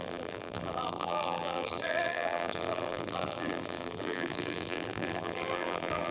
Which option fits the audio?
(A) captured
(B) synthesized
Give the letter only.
B